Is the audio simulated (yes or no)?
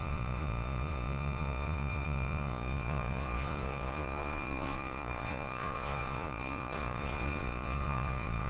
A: yes